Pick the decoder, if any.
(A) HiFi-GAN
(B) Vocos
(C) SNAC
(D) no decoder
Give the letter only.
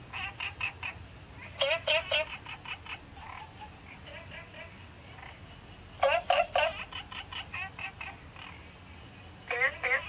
D